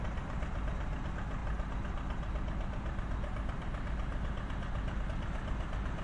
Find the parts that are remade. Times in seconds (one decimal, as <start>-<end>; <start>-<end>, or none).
none